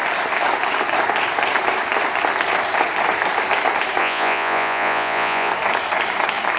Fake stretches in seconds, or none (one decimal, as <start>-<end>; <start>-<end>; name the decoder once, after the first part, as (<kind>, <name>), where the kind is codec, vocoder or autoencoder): 4.0-5.5 (vocoder, Vocos)